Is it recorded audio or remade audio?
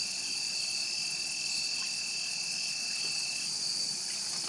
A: recorded